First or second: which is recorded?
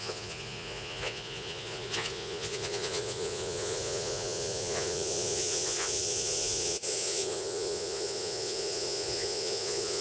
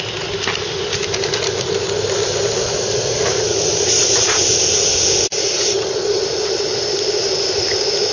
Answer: second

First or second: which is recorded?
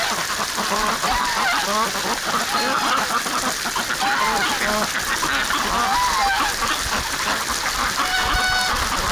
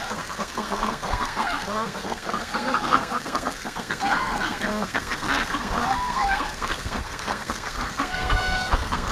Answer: first